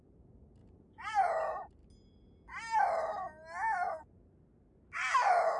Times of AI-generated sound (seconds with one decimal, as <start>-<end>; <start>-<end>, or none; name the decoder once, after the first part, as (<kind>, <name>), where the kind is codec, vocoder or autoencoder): 0.6-1.3 (vocoder, Vocos)